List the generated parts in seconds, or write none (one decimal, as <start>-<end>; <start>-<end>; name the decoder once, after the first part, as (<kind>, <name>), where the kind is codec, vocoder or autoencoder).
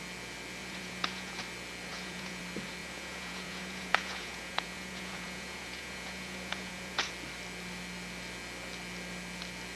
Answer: 0.6-1.3 (vocoder, Vocos); 1.9-2.4; 2.8-7.1